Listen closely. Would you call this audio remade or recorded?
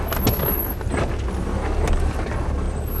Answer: recorded